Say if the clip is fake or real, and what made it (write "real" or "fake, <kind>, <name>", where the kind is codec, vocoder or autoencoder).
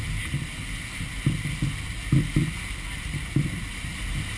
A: real